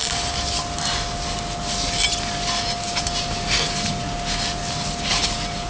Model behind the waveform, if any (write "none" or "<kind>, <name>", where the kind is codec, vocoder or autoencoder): none